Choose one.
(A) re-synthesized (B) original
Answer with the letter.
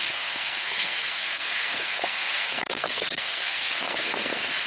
A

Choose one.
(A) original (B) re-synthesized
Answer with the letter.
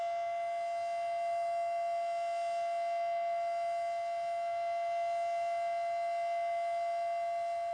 A